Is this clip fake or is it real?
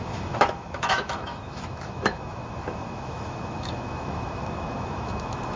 fake